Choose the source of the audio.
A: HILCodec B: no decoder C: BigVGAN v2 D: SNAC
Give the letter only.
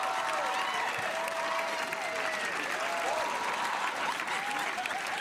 B